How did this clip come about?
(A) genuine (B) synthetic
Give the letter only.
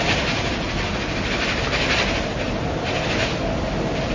A